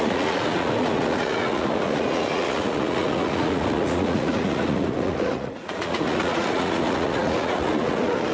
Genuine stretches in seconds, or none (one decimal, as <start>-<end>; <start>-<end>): none